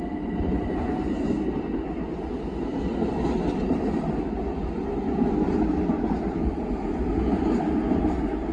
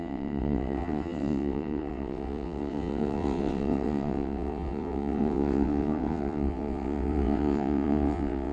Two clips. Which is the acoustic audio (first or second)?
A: first